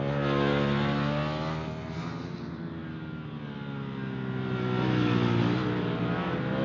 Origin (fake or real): real